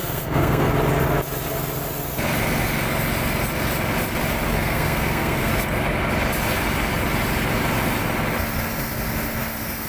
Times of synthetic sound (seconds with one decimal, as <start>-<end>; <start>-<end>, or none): 0.0-0.7; 4.5-5.5